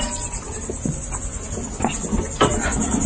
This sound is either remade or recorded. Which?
recorded